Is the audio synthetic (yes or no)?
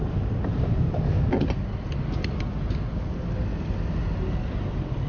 no